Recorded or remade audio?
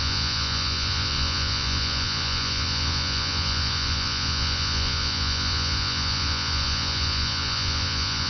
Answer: remade